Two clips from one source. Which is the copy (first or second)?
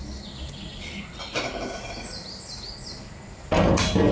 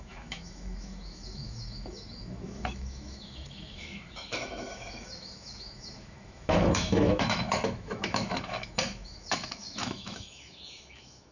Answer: second